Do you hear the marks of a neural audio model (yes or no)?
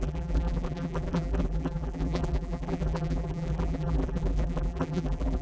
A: yes